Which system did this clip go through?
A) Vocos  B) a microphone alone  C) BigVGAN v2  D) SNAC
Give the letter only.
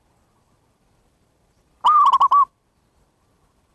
C